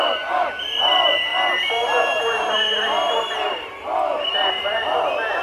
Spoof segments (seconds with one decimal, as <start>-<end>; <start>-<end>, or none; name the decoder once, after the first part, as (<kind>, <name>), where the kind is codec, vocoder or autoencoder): 0.0-1.3 (vocoder, BigVGAN v2); 4.5-5.4